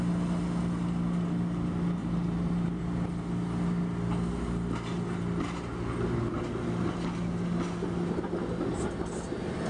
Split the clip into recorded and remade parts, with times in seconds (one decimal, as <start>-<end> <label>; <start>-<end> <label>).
0.0-2.0 recorded; 2.0-2.8 remade; 2.8-9.7 recorded